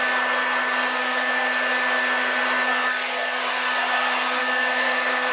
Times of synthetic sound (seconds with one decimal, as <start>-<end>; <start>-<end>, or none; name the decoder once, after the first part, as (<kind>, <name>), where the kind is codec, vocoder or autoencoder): 4.4-5.3 (codec, DAC)